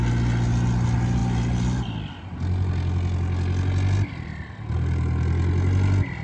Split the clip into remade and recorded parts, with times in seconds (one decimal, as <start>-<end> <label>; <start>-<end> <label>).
0.0-6.2 recorded